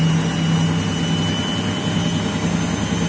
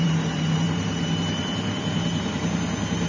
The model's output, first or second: second